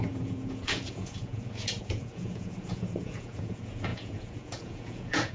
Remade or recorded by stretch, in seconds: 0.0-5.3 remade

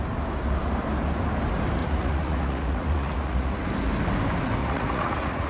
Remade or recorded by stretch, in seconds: 0.0-1.8 recorded; 1.8-3.7 remade; 3.7-4.6 recorded; 4.6-5.5 remade